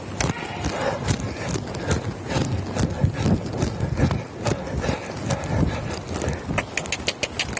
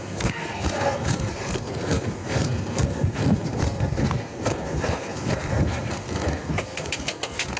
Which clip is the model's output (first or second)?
second